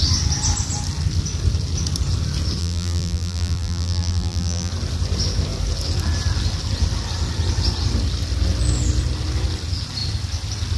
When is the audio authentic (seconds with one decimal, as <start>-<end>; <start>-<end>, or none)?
0.0-2.6; 4.7-10.8